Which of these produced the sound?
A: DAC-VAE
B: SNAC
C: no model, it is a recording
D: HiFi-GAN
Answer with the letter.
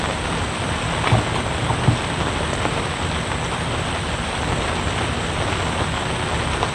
C